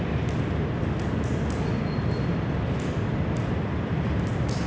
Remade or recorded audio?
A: recorded